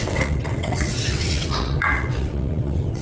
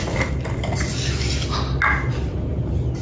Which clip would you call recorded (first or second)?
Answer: second